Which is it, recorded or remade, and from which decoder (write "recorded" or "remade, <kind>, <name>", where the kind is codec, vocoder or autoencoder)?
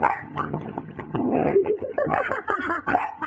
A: remade, vocoder, HiFi-GAN